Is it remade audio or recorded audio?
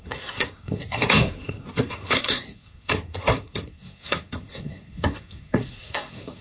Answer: remade